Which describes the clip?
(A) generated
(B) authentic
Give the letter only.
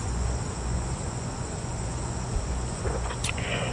A